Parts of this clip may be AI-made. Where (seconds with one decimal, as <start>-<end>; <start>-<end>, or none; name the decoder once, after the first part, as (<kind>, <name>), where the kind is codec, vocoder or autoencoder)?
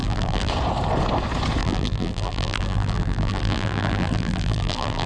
0.0-0.5 (vocoder, BigVGAN v2); 1.6-5.1